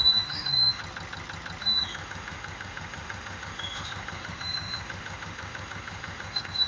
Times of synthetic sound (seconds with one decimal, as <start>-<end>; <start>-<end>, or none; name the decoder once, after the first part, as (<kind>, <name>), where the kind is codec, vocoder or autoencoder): 0.0-0.8 (autoencoder, DAC-VAE); 1.6-6.7